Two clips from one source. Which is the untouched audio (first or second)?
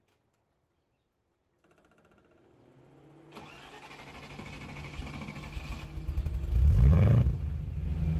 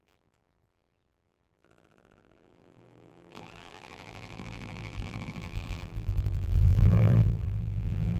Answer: first